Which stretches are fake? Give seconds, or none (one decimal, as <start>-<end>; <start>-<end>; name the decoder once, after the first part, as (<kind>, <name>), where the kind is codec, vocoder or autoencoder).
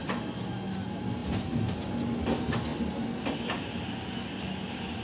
1.2-1.9 (vocoder, BigVGAN v2)